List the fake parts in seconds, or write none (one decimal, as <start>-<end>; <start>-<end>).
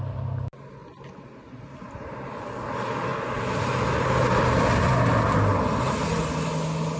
none